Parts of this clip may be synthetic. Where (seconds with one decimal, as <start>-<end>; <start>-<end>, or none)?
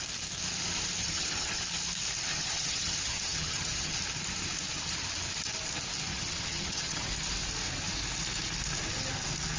1.0-1.6; 2.3-4.0; 6.1-7.1